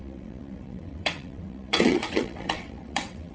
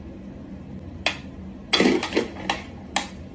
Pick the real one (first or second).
second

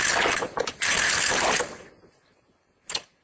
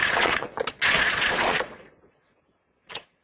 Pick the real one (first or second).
first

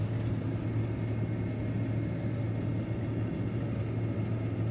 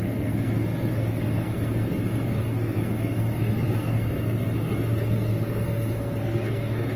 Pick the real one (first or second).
first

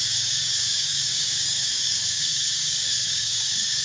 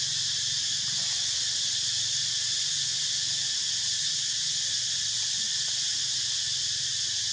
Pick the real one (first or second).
second